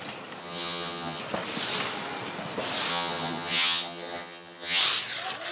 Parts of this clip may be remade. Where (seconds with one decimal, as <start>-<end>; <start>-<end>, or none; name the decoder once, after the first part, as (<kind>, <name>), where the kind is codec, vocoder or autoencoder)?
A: 0.4-1.2 (vocoder, HiFi-GAN); 2.9-4.8